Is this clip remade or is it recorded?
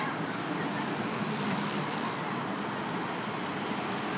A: recorded